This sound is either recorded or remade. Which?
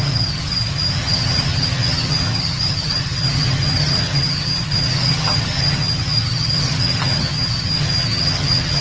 remade